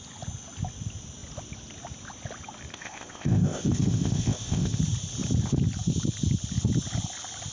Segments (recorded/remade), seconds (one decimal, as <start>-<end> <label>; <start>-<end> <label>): 0.0-2.7 recorded; 2.7-4.8 remade; 4.8-7.5 recorded